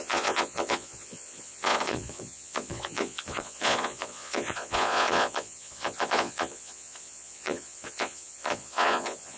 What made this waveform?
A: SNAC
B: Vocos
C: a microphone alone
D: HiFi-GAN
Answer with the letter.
B